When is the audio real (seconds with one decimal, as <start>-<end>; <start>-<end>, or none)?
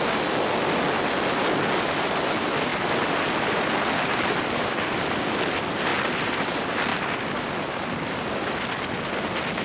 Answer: 0.0-2.7; 5.0-6.9; 8.7-9.6